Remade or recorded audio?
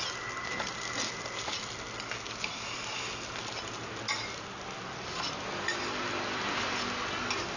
recorded